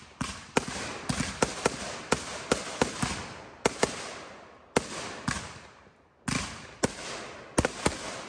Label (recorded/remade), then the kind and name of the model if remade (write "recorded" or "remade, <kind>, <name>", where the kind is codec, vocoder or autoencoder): recorded